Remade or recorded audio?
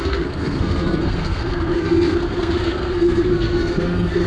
remade